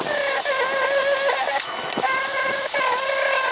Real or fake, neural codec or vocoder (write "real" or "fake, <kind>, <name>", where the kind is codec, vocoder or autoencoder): real